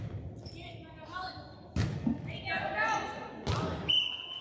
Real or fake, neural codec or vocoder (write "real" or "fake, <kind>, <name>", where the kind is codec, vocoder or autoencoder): real